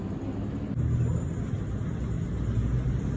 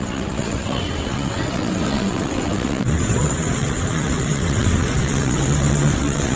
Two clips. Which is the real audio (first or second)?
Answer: first